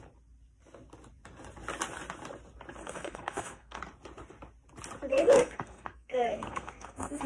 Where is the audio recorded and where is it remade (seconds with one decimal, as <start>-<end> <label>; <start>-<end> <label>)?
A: 0.0-2.8 recorded; 2.8-3.8 remade; 3.8-5.1 recorded; 5.1-7.3 remade